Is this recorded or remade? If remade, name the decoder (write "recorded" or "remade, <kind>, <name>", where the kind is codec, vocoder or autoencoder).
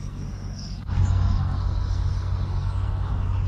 remade, codec, SNAC